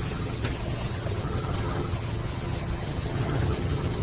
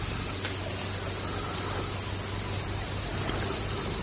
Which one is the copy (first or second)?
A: first